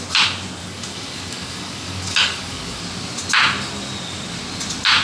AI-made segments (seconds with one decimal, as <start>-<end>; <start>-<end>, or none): 0.6-2.8